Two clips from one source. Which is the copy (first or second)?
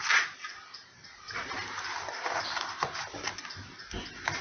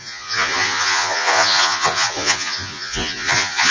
second